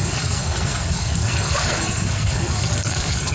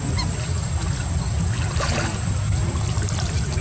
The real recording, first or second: second